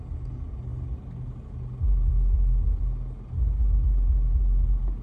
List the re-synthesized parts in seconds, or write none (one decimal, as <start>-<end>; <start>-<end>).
none